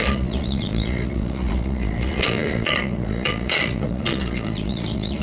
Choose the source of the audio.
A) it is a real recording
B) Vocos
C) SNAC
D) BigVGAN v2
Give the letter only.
B